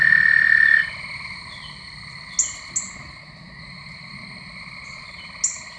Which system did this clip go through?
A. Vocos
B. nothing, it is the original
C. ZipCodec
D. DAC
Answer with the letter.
B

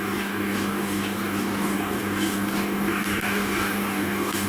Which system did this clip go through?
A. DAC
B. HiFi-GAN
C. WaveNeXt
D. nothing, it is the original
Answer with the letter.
A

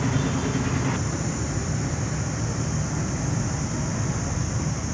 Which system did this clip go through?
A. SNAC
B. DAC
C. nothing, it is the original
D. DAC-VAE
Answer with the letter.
C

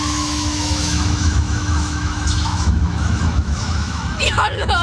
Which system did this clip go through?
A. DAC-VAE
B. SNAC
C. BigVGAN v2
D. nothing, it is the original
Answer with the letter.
A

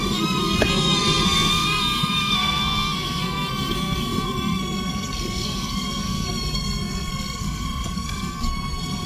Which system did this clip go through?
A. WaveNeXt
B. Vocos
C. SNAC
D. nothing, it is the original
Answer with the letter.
C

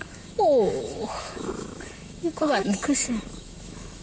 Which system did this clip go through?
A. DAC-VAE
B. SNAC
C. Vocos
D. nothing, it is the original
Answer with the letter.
A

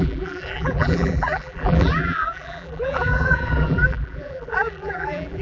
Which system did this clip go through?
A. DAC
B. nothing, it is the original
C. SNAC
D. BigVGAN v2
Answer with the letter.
D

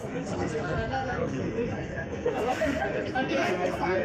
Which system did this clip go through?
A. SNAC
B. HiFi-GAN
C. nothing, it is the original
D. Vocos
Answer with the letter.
A